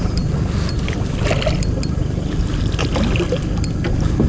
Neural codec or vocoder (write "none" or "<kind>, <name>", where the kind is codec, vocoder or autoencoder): none